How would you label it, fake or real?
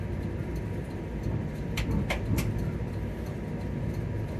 real